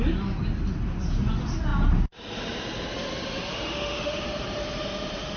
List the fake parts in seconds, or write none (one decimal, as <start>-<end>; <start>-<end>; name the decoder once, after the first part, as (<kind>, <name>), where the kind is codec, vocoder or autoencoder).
3.5-4.2 (autoencoder, DAC-VAE)